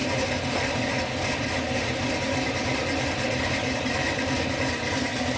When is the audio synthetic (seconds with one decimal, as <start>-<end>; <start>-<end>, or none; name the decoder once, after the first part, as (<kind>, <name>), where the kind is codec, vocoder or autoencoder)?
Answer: 0.0-5.4 (vocoder, BigVGAN v2)